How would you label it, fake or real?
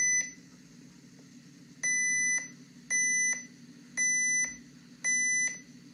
real